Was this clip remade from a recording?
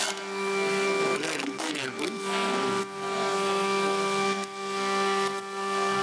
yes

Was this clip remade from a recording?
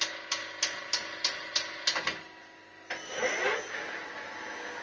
no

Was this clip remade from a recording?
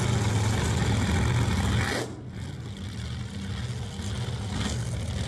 no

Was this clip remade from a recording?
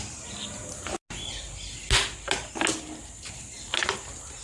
no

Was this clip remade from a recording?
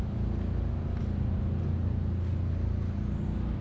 no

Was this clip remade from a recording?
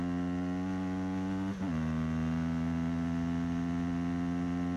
no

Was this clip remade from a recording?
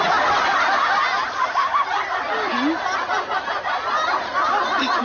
no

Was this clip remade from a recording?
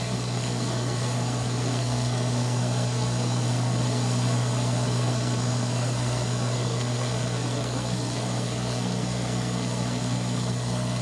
yes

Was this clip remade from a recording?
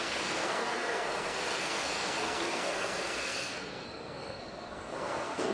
yes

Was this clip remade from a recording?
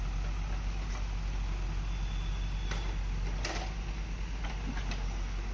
no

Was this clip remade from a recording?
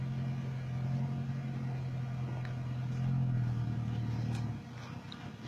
no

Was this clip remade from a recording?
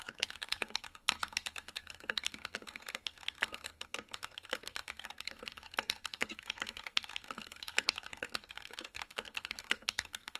yes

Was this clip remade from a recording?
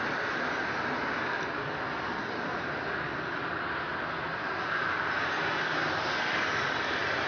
no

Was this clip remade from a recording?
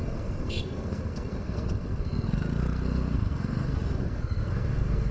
yes